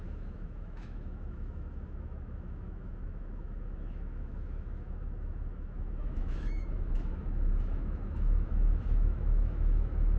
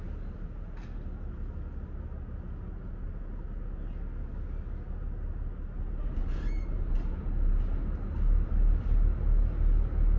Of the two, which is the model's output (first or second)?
first